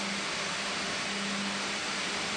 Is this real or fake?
real